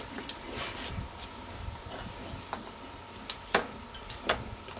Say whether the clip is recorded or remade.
recorded